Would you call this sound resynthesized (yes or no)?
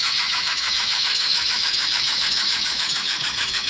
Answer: yes